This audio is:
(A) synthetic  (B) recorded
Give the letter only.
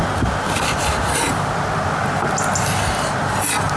B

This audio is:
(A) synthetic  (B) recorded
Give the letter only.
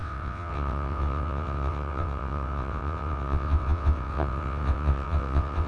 A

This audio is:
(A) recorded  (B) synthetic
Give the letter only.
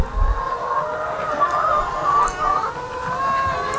A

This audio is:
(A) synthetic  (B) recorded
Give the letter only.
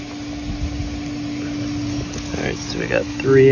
B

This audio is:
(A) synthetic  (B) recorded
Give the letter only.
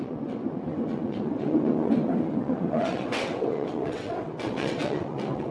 A